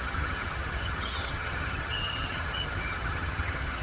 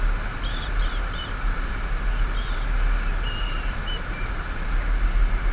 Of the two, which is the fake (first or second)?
first